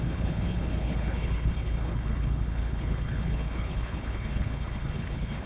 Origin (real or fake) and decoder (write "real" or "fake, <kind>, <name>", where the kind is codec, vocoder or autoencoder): fake, codec, HILCodec